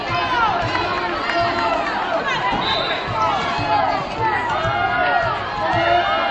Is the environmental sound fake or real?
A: real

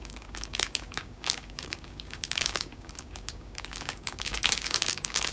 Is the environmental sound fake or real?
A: fake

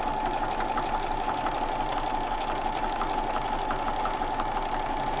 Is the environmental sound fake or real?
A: real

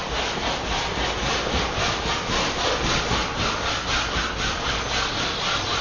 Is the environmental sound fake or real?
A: real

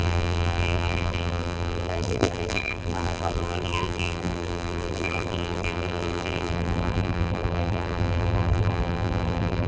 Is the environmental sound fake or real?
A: fake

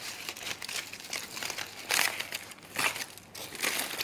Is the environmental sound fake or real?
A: real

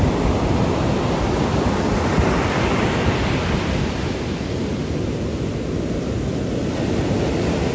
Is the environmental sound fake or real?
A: real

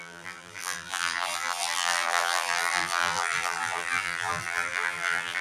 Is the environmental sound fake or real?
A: fake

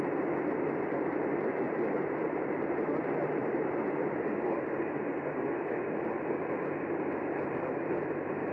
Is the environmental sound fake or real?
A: fake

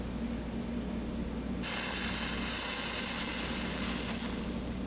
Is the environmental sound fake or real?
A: real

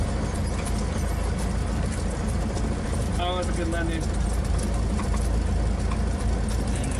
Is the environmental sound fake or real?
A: real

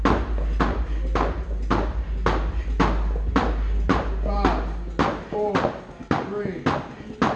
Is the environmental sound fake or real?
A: real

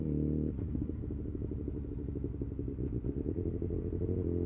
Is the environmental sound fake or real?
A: real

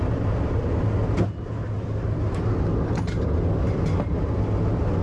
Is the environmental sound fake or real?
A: fake